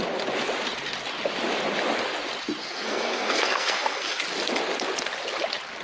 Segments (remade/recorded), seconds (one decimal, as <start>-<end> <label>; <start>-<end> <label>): 0.0-2.6 recorded; 2.6-4.2 remade; 4.2-5.8 recorded